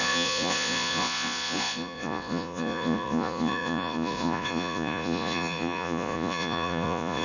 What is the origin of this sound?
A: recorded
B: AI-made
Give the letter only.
B